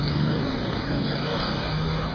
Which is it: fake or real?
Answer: fake